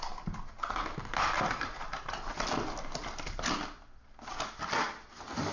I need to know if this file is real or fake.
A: real